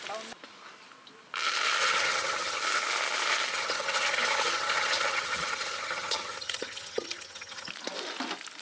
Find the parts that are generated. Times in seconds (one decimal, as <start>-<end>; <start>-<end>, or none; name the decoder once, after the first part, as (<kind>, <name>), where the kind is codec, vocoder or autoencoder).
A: 1.8-2.6 (vocoder, HiFi-GAN); 3.5-7.7